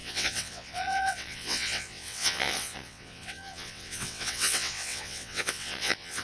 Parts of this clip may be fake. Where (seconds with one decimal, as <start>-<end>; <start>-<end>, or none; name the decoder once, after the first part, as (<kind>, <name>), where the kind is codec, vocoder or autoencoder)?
0.0-6.2 (vocoder, WaveNeXt)